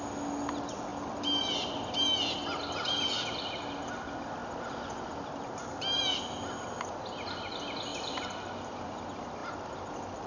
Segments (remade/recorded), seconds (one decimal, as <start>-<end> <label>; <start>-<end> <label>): 0.0-7.9 recorded; 7.9-9.0 remade; 9.0-10.3 recorded